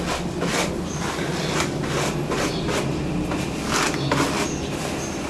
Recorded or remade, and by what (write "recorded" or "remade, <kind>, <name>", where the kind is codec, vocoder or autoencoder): recorded